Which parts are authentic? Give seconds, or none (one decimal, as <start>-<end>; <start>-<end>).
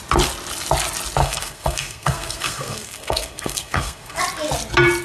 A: 0.0-1.2; 4.2-5.0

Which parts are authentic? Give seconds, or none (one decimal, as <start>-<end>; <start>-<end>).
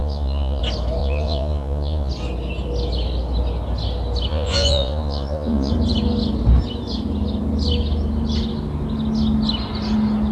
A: 0.6-1.0; 2.1-4.3; 5.7-10.3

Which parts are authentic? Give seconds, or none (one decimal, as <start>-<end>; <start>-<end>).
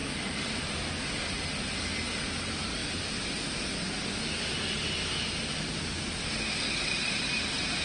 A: 0.0-7.8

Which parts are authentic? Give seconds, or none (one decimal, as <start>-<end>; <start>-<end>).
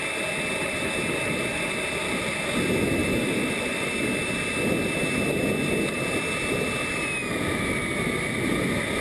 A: 0.0-3.0; 3.9-9.0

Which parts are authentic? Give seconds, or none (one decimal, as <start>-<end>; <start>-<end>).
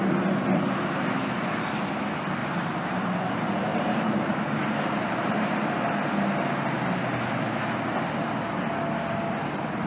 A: 0.0-2.4; 3.0-3.7; 5.8-9.9